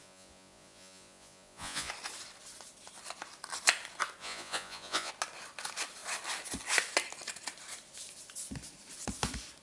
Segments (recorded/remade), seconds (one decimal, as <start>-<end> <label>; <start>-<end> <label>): 0.0-1.9 remade; 1.9-4.2 recorded; 4.2-5.1 remade; 5.1-9.6 recorded